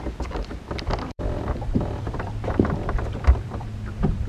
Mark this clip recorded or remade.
remade